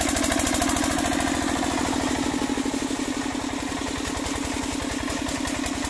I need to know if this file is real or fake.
real